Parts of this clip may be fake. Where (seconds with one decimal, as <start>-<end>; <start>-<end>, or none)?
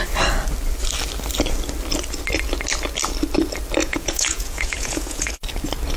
3.8-5.3